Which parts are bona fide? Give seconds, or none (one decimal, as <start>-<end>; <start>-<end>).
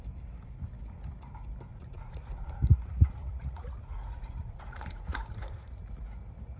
0.0-1.7; 5.7-6.6